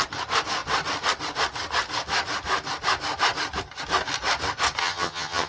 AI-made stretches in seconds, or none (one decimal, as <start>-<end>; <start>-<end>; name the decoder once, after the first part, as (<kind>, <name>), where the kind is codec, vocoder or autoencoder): 4.8-5.5 (vocoder, HiFi-GAN)